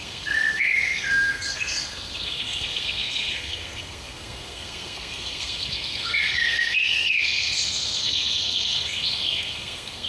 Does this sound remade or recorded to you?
remade